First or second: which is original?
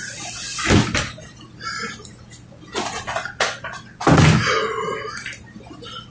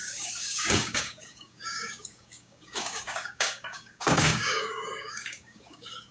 first